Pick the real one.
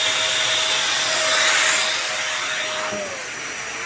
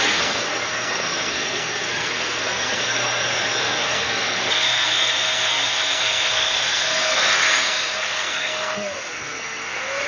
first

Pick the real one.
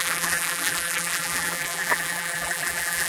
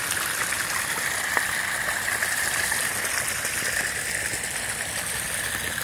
second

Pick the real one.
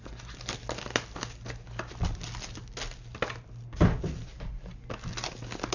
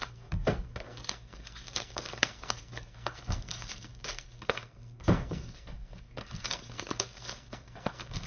first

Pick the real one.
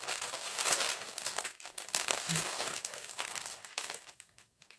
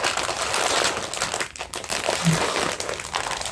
second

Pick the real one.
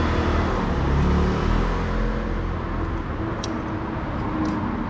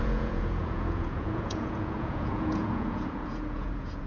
first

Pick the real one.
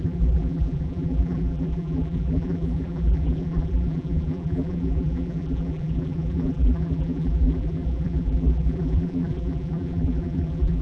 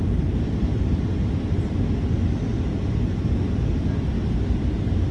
second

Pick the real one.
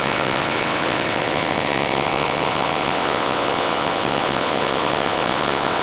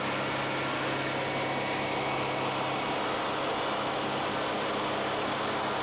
second